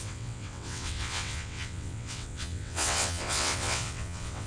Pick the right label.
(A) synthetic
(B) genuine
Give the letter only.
A